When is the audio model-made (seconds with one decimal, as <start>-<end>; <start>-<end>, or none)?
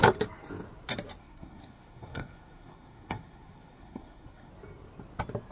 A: 1.2-4.5